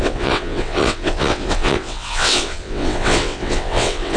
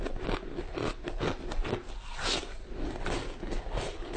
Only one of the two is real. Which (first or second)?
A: second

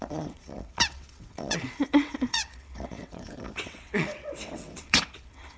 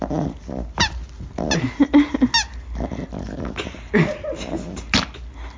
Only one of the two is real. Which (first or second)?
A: second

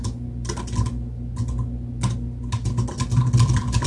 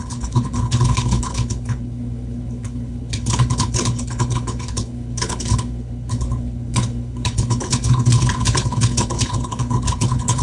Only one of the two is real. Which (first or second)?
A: first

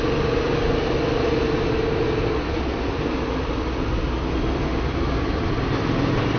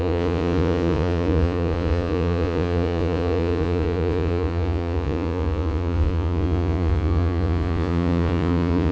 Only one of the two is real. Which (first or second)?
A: first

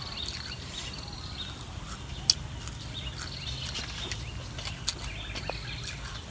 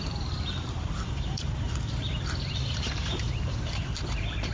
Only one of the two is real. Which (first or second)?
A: first